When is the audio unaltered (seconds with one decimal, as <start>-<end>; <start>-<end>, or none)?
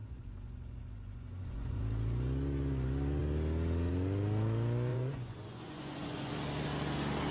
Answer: 1.8-4.9; 6.3-7.3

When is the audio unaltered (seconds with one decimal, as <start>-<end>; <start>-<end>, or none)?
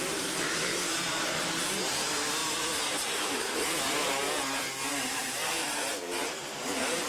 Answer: none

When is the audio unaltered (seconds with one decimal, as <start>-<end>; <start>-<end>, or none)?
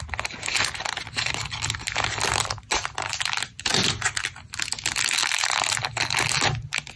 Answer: 0.0-7.0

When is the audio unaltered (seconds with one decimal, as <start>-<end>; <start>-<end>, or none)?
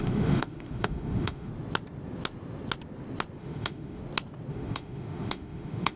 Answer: 1.5-3.4; 4.0-4.5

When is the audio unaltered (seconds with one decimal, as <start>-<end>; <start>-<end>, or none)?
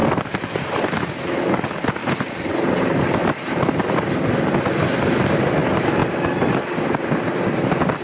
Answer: 1.0-2.0; 3.0-8.0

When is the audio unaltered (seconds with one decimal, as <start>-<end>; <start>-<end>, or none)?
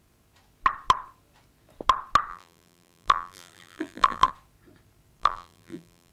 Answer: 0.0-2.3; 4.3-5.2